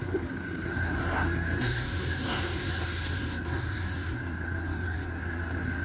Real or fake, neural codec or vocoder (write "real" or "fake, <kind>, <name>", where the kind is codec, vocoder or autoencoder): fake, codec, SNAC